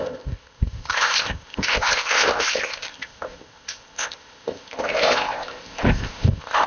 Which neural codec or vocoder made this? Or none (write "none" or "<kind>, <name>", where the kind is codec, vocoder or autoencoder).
codec, ZipCodec